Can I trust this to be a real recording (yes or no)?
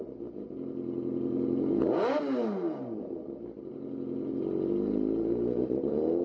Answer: yes